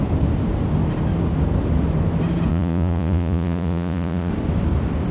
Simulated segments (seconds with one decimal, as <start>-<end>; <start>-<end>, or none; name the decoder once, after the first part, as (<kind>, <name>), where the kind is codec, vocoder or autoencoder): 2.5-4.3 (vocoder, Vocos)